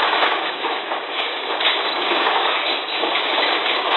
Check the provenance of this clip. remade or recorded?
remade